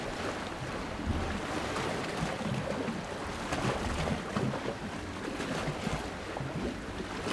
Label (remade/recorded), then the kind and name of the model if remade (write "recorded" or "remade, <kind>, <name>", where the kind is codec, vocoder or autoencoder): recorded